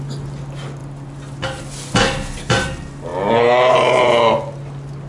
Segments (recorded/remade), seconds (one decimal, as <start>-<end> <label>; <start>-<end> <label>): 0.0-5.1 recorded